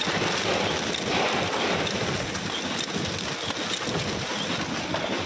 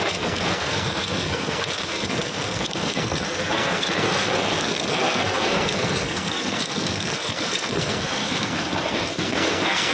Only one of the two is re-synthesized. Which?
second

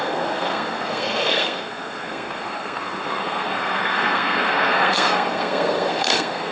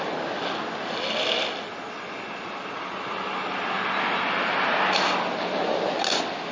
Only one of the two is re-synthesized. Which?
first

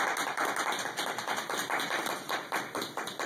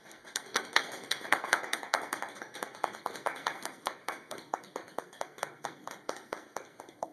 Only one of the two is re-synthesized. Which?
second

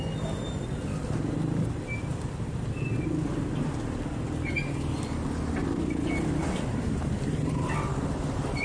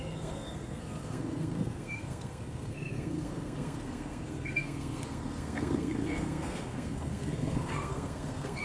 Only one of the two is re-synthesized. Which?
second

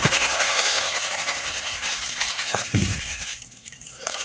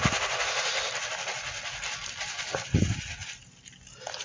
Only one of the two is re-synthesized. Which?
first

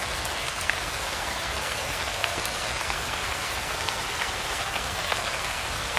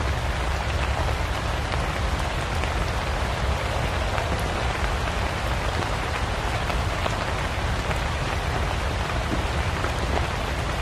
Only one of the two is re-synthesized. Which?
first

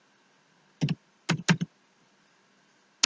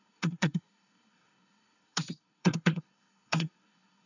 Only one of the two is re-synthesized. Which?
second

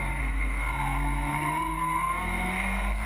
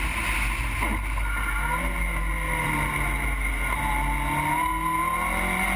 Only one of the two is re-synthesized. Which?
first